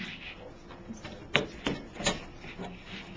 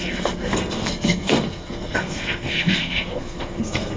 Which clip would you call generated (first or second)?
second